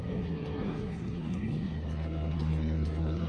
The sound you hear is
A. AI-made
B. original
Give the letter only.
A